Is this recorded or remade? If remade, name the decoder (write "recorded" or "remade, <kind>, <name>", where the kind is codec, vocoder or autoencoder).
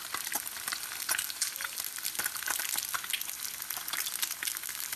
recorded